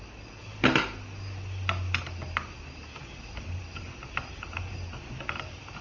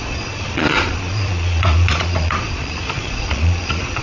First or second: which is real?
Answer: first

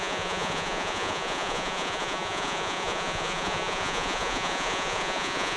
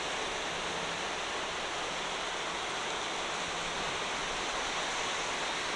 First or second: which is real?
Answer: second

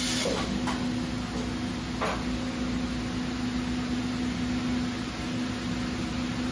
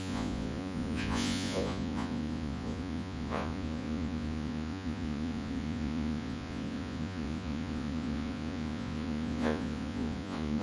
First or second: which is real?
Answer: first